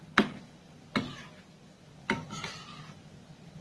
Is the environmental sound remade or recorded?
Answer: recorded